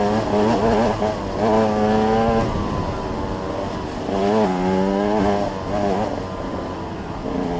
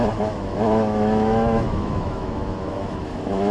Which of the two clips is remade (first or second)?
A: second